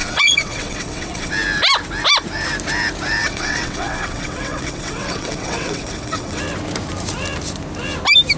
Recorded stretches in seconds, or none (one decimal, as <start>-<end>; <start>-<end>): 1.3-3.2; 6.4-8.4